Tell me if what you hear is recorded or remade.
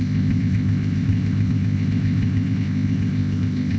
remade